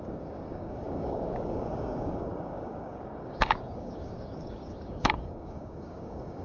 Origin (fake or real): fake